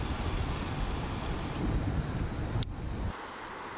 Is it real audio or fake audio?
real